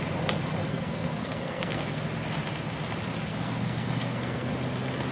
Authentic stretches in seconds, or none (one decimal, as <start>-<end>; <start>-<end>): 0.0-0.7; 2.0-3.3; 4.5-5.1